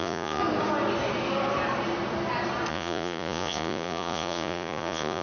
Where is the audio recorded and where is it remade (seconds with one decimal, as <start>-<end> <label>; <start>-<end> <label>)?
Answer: 0.0-0.4 remade; 0.4-2.7 recorded; 2.7-5.2 remade